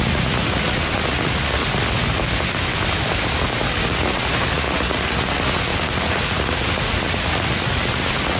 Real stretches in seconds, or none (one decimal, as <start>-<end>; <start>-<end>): 1.6-4.0